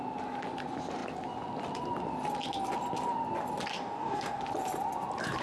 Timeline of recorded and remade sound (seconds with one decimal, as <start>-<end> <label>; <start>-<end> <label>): 0.0-3.7 recorded; 3.7-4.4 remade; 4.4-5.4 recorded